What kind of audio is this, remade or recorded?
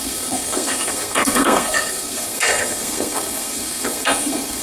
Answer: remade